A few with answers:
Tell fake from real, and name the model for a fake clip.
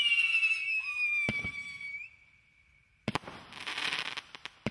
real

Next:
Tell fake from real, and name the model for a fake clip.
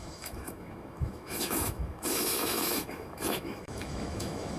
fake, autoencoder, DAC-VAE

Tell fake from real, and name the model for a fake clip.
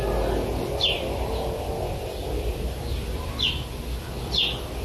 real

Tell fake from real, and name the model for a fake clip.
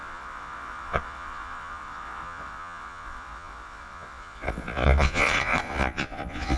fake, vocoder, Vocos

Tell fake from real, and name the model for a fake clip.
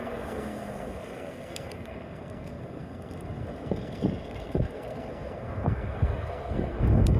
fake, codec, SNAC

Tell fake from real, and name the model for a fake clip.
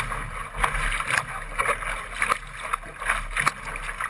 real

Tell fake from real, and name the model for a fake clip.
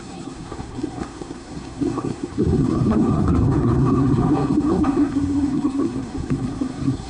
fake, codec, SNAC